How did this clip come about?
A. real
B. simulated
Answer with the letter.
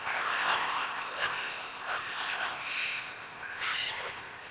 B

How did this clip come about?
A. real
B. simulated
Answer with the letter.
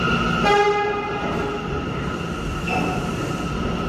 A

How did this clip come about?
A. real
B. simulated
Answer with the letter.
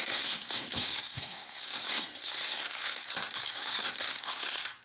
B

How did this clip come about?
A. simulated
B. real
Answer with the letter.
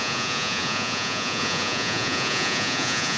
A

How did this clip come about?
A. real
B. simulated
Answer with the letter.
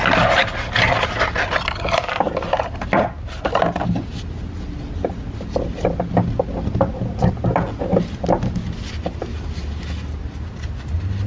A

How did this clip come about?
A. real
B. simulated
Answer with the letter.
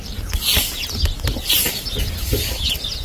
A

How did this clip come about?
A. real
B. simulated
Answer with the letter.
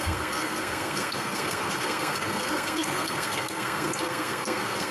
B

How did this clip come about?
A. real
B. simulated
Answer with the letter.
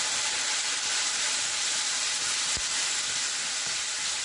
A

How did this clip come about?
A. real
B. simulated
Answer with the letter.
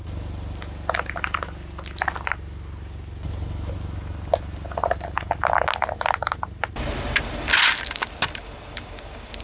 A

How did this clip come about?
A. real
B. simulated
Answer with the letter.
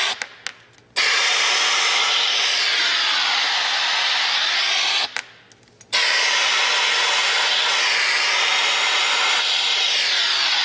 A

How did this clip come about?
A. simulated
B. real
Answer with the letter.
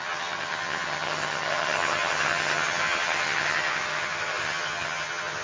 A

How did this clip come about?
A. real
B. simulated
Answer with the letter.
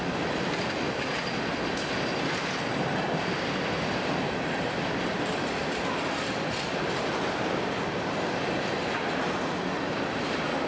A